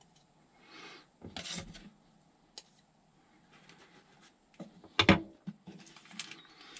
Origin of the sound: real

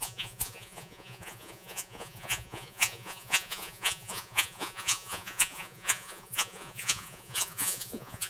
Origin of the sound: fake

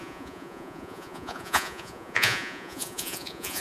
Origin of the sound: fake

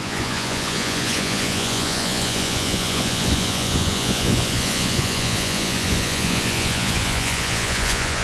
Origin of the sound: fake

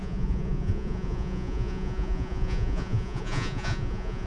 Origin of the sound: fake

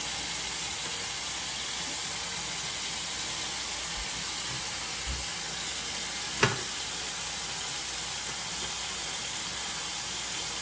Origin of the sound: real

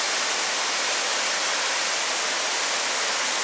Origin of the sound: real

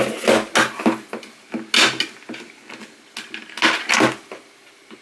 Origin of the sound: real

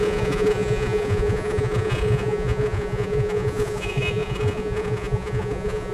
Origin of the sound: fake